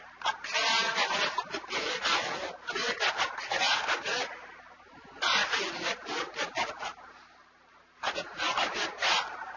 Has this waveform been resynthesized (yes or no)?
no